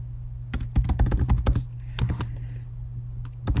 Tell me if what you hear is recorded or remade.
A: recorded